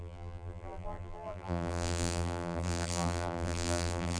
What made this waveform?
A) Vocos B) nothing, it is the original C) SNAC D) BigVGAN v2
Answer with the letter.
D